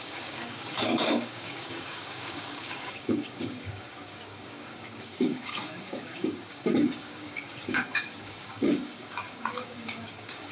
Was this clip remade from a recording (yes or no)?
yes